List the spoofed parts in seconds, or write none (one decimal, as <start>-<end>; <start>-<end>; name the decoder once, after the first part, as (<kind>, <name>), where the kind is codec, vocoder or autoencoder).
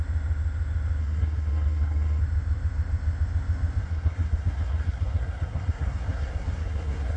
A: 1.0-2.2 (codec, SNAC); 3.8-7.2